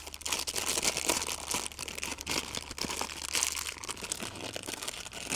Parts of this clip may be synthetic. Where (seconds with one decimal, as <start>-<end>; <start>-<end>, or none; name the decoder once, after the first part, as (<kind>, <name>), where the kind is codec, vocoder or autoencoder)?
none